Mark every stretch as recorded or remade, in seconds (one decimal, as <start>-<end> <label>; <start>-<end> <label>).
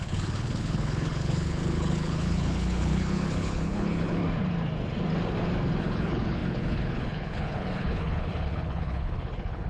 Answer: 0.0-4.2 remade; 4.2-5.8 recorded; 5.8-9.7 remade